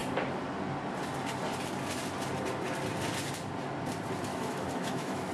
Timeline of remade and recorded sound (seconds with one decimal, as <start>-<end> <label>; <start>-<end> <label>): 0.0-4.3 recorded; 4.3-5.3 remade